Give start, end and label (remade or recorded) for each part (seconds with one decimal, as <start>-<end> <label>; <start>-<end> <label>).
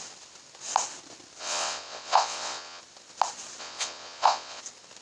0.0-1.4 recorded; 1.4-2.8 remade; 2.8-3.6 recorded; 3.6-4.6 remade; 4.6-5.0 recorded